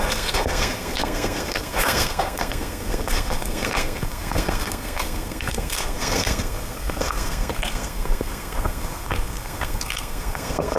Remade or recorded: remade